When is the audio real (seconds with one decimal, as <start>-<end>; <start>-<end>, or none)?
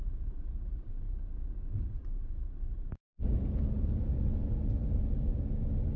5.3-6.0